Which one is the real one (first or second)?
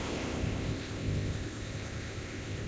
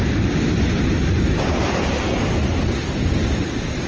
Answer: second